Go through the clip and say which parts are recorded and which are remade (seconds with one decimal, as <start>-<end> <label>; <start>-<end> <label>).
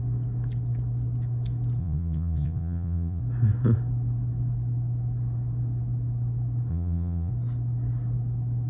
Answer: 0.0-1.8 recorded; 1.8-3.2 remade; 3.2-6.7 recorded; 6.7-7.3 remade; 7.3-8.7 recorded